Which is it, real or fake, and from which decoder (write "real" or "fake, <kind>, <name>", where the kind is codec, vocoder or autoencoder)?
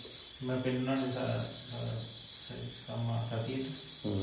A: real